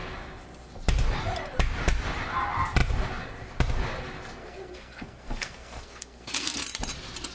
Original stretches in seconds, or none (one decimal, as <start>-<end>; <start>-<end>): 0.0-4.4; 6.6-7.3